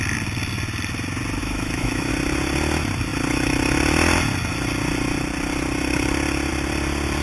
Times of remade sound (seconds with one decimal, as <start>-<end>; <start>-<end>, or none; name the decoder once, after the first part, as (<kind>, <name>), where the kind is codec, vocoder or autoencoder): 1.4-2.1 (autoencoder, DAC-VAE)